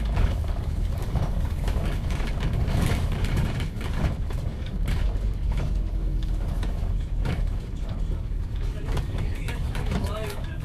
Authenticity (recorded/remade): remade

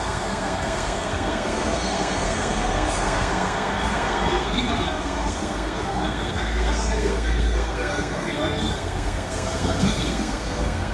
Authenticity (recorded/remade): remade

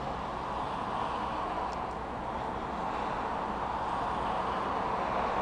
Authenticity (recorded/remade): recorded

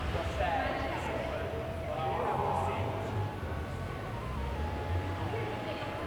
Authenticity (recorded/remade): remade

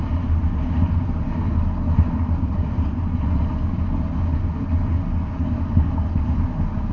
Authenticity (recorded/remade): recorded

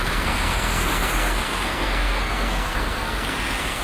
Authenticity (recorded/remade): remade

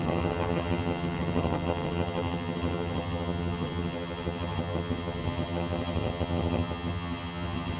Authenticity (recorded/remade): remade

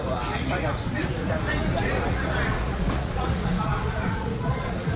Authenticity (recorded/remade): remade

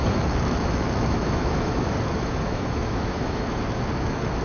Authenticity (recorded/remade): remade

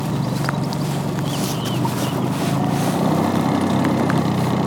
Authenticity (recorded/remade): recorded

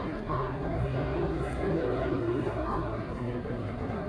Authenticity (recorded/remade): remade